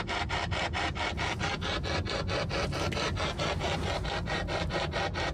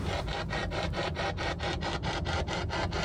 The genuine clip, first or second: first